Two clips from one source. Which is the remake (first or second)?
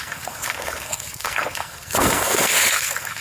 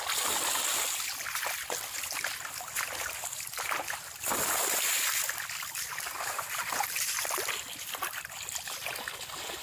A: first